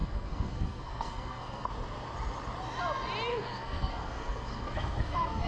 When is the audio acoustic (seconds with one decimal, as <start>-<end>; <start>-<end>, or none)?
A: 1.7-3.3